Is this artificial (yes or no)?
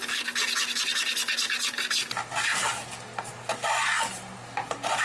no